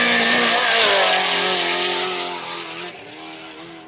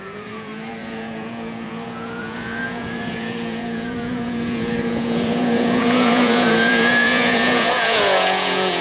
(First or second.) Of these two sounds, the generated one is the second